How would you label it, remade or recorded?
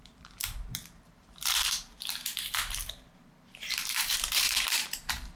remade